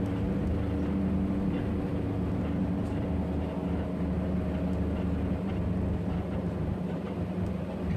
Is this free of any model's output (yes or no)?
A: yes